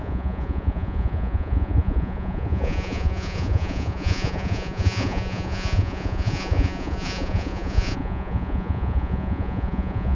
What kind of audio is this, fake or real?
fake